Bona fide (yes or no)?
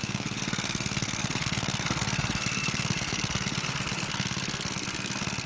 no